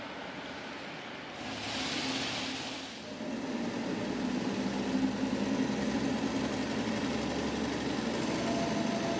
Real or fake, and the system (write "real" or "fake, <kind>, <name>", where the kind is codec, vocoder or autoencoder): real